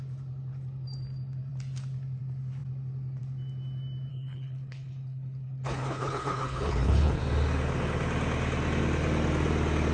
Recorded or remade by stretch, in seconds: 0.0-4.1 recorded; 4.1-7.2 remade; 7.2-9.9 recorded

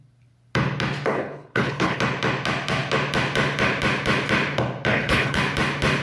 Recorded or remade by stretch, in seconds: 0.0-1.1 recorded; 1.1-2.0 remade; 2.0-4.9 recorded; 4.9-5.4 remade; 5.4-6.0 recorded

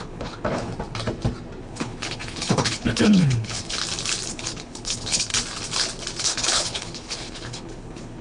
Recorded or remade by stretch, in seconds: 0.0-0.7 remade; 0.7-1.6 recorded; 1.6-3.8 remade; 3.8-4.3 recorded; 4.3-5.3 remade; 5.3-6.2 recorded; 6.2-8.2 remade